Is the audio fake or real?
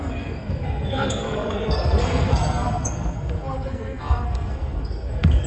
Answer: fake